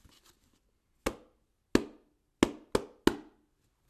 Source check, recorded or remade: recorded